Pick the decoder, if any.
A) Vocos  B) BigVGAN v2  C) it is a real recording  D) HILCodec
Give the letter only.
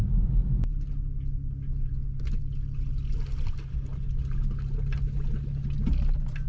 C